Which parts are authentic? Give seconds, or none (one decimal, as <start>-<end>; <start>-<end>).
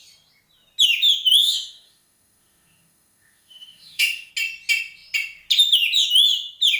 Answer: 0.0-1.4; 4.3-6.8